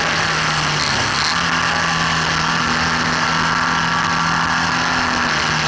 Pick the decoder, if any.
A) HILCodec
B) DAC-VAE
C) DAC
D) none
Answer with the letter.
D